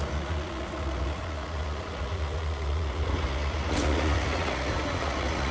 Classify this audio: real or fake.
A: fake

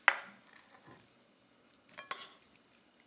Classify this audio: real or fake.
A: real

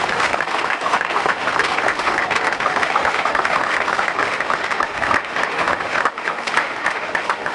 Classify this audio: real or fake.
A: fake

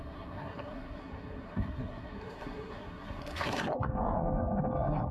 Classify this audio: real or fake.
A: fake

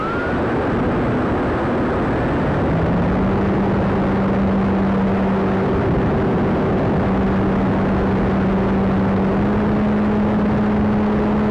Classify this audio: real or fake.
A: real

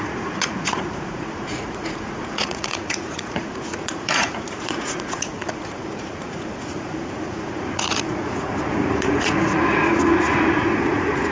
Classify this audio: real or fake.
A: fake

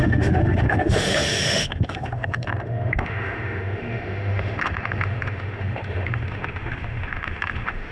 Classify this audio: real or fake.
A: fake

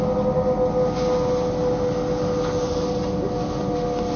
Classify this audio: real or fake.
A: real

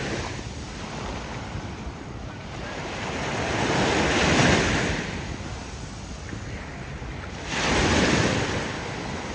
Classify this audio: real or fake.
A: real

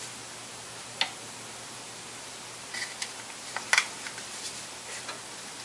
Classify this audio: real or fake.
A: real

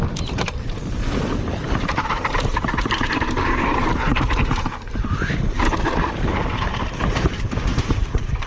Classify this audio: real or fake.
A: fake